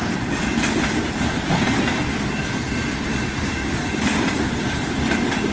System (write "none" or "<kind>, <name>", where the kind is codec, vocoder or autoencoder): vocoder, BigVGAN v2